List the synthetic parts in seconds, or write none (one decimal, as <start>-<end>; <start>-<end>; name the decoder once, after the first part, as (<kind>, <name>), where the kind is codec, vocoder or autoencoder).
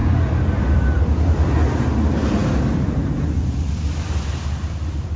none